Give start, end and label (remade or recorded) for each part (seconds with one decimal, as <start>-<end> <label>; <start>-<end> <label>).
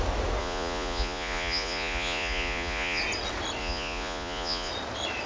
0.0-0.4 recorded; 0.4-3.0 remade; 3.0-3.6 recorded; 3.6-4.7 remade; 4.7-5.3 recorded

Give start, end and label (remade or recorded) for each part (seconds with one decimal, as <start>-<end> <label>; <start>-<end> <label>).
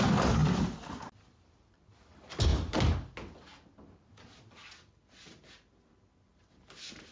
0.0-7.1 recorded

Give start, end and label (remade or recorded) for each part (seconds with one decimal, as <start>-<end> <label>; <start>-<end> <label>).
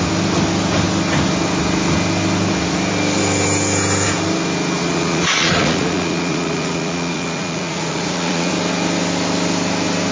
0.0-4.8 recorded; 4.8-8.5 remade; 8.5-10.1 recorded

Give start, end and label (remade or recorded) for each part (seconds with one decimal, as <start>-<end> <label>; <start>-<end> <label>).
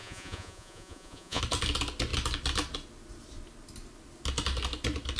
0.0-1.4 remade; 1.4-5.2 recorded